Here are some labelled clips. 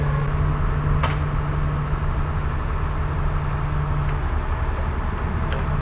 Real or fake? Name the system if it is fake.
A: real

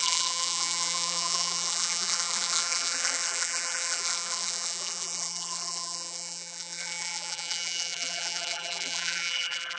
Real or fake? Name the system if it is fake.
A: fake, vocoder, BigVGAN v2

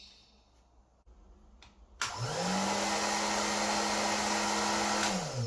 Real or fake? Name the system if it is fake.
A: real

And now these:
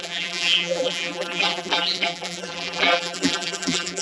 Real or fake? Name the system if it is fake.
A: fake, vocoder, BigVGAN v2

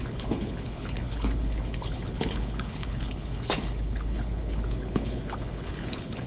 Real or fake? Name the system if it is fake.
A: fake, codec, HILCodec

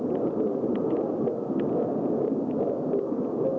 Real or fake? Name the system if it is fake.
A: real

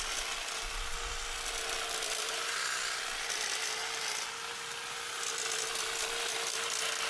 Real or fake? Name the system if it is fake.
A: real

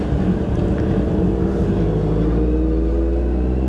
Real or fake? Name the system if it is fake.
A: real